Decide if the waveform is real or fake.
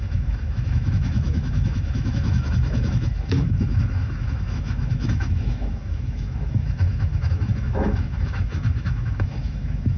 fake